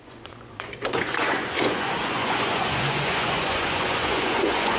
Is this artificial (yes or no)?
yes